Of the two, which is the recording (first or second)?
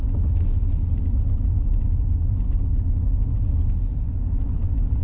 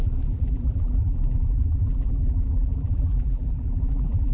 first